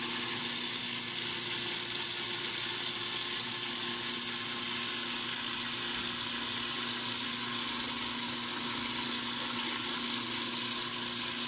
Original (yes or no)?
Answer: yes